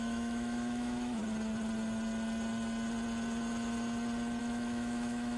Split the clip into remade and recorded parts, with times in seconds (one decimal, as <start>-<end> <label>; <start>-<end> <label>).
0.0-1.2 remade; 1.2-4.4 recorded; 4.4-5.4 remade